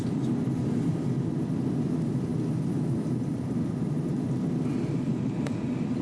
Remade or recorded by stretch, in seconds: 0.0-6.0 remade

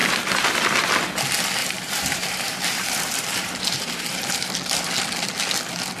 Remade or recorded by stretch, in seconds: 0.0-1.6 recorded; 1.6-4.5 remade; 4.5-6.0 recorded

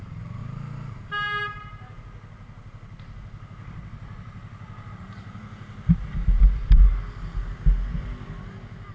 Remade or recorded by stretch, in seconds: 0.0-0.4 remade; 0.4-4.9 recorded; 4.9-6.9 remade; 6.9-8.9 recorded

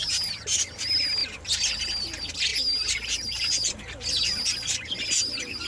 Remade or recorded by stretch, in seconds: 0.0-5.7 recorded